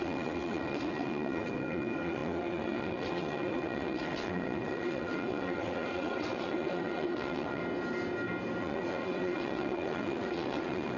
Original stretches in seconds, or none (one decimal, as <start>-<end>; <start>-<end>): 7.6-8.6